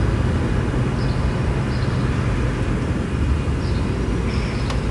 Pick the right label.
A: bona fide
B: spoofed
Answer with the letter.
A